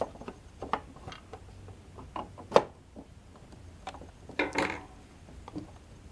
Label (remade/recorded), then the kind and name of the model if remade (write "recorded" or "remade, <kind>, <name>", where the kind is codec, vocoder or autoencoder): recorded